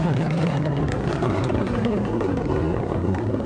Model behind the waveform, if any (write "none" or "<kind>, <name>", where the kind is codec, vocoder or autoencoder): codec, SNAC